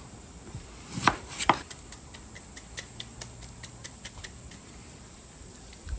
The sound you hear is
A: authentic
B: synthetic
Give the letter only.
B